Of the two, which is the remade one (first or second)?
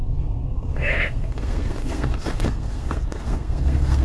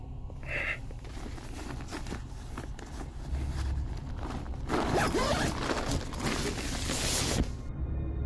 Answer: first